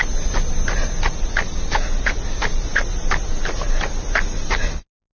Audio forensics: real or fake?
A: real